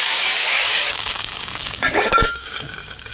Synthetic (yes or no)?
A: yes